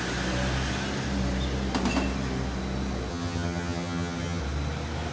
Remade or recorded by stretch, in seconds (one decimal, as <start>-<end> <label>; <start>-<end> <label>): 0.0-3.1 recorded; 3.1-4.4 remade; 4.4-5.1 recorded